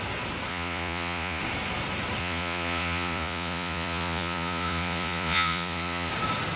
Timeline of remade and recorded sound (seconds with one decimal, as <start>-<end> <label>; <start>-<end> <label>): 0.0-0.5 recorded; 0.5-1.4 remade; 1.4-2.2 recorded; 2.2-6.1 remade; 6.1-6.6 recorded